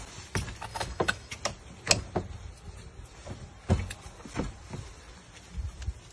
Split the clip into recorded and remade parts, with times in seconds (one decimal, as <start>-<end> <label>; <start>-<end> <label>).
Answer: 0.0-0.7 recorded; 0.7-1.3 remade; 1.3-6.1 recorded

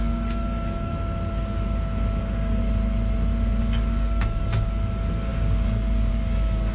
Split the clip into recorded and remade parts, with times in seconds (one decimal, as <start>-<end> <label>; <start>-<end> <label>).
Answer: 0.0-0.9 remade; 0.9-2.2 recorded; 2.2-2.6 remade; 2.6-3.6 recorded; 3.6-6.7 remade

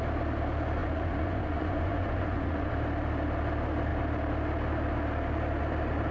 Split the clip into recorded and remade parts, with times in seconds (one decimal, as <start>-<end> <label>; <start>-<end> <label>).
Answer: 0.0-0.8 recorded; 0.8-2.7 remade; 2.7-6.1 recorded

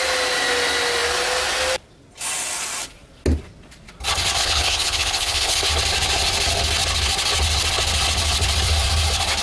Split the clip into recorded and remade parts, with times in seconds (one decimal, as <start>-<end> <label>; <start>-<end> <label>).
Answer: 0.0-4.4 recorded; 4.4-5.7 remade; 5.7-9.4 recorded